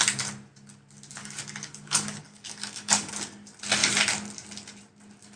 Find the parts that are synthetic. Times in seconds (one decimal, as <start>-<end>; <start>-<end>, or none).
1.2-3.1